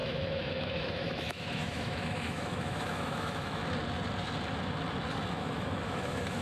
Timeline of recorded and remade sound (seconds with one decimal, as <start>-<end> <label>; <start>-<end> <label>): 0.0-3.6 remade; 3.6-5.3 recorded; 5.3-6.4 remade